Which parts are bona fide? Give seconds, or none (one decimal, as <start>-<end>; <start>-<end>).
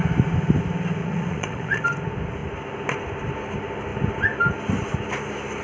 0.0-1.0; 1.8-5.6